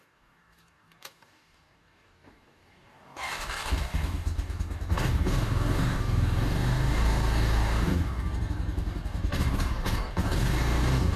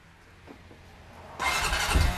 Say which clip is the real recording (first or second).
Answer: second